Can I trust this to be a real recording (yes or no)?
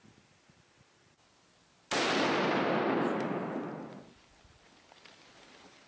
yes